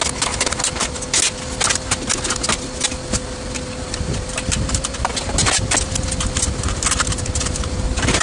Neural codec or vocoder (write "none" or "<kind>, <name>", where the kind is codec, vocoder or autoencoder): none